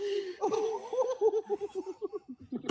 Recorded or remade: recorded